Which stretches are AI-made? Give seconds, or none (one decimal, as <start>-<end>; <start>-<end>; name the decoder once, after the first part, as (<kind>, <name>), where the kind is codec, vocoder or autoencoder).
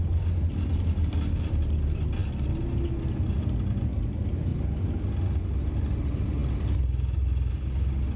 none